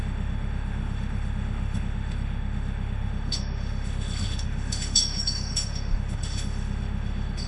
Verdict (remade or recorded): remade